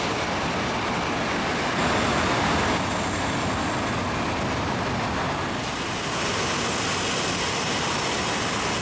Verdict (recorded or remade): recorded